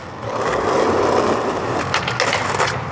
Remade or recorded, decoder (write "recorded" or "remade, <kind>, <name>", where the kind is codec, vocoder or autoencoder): recorded